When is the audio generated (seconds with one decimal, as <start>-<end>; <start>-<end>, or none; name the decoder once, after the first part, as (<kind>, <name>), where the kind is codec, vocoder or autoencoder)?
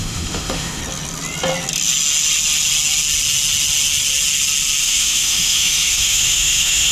0.0-0.8 (autoencoder, DAC-VAE); 4.8-6.9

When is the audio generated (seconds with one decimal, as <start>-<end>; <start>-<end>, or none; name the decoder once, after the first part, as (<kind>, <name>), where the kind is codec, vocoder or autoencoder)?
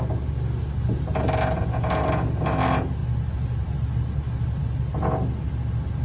none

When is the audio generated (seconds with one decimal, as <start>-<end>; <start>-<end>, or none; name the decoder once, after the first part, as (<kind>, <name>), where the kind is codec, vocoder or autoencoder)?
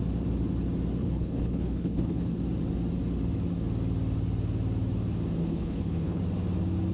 1.0-2.4 (codec, HILCodec); 5.4-6.2